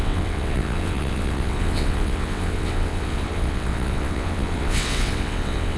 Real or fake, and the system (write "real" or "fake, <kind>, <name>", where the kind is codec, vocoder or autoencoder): fake, vocoder, WaveNeXt